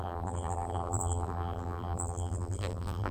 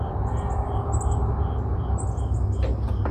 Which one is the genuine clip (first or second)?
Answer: second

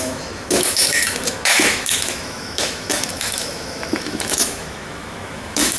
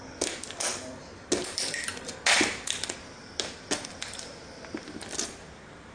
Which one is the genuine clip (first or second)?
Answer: second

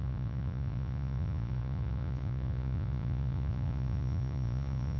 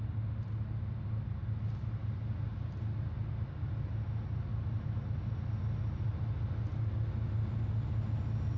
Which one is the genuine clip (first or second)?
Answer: second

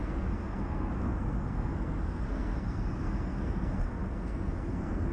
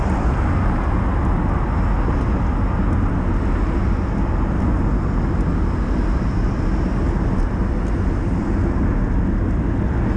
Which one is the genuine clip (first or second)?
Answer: second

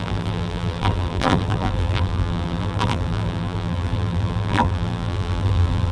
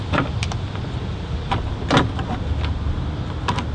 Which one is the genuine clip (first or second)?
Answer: second